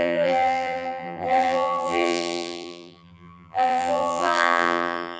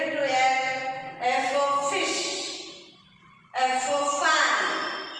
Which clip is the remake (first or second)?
first